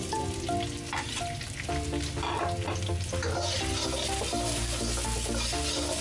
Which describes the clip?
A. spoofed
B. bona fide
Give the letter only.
B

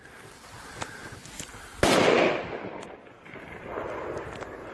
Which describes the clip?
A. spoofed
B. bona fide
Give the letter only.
B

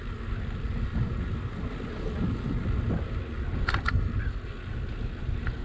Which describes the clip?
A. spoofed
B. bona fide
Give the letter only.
B